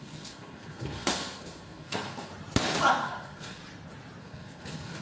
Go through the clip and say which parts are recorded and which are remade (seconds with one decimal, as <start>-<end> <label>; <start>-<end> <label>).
0.0-2.3 remade; 2.3-2.9 recorded; 2.9-3.6 remade; 3.6-4.2 recorded; 4.2-5.0 remade